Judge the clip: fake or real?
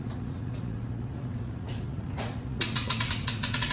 fake